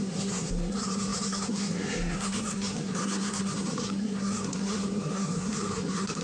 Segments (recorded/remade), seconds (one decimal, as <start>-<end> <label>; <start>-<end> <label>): 0.0-6.2 remade